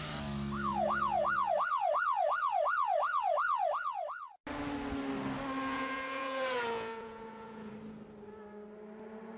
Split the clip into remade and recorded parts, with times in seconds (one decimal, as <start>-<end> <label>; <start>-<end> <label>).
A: 0.0-0.7 recorded; 0.7-1.5 remade; 1.5-5.7 recorded; 5.7-7.7 remade; 7.7-9.4 recorded